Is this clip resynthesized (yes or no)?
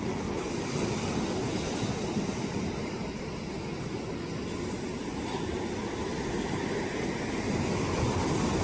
no